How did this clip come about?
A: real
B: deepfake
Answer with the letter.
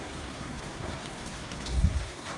B